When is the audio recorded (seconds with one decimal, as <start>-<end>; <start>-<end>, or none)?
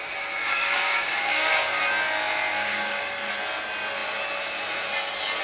0.0-0.4; 1.8-2.5; 3.3-5.4